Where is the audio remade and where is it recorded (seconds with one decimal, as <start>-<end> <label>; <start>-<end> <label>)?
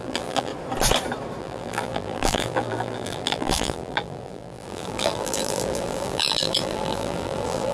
0.0-0.5 remade; 0.5-1.4 recorded; 1.4-7.7 remade